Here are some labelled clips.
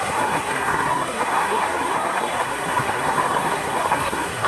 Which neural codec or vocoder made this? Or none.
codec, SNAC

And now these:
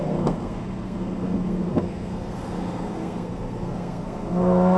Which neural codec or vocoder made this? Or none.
codec, SNAC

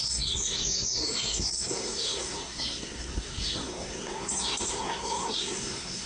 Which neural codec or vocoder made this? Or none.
codec, SNAC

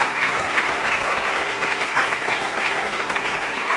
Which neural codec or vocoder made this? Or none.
codec, SNAC